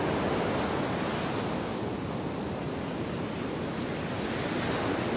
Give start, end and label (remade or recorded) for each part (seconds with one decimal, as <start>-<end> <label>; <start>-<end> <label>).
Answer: 0.0-5.2 recorded